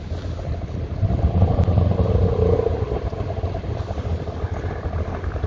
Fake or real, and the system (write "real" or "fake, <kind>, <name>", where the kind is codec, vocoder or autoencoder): real